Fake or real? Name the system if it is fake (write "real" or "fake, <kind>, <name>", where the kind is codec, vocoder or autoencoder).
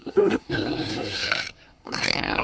fake, codec, SNAC